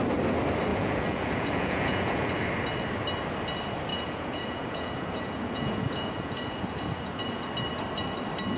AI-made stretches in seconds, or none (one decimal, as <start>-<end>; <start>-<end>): 0.7-2.4; 3.9-7.5